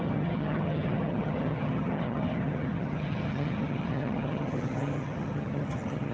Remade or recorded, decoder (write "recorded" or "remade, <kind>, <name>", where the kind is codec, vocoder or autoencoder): remade, vocoder, HiFi-GAN